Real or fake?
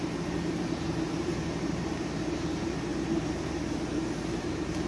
fake